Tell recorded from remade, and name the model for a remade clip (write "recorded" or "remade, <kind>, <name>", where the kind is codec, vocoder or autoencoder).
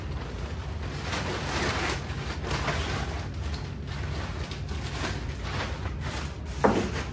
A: recorded